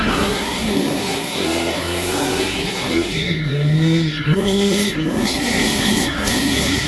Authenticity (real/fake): fake